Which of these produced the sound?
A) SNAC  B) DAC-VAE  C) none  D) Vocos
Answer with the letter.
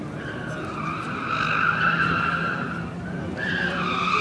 C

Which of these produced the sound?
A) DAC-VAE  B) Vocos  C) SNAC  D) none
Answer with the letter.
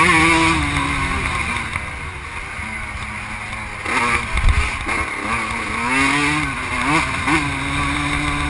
D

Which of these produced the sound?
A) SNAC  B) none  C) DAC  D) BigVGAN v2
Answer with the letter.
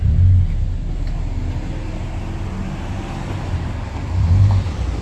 B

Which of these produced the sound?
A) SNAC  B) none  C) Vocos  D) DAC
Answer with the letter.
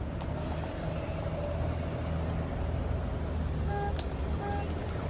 B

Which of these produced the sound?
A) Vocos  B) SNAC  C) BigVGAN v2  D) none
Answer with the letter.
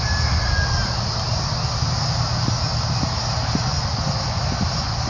D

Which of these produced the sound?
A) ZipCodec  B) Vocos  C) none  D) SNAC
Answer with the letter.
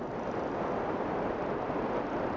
C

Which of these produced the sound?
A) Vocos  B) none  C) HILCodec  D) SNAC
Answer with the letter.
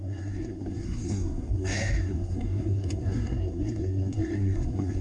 D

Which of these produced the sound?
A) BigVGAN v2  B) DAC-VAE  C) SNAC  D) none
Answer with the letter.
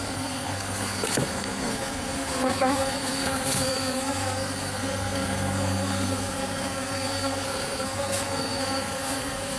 C